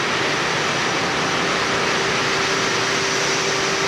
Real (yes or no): yes